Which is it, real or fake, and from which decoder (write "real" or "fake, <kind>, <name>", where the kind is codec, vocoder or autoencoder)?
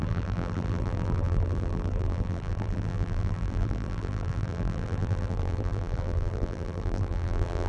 fake, vocoder, BigVGAN v2